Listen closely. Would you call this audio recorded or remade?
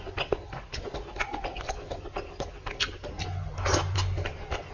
recorded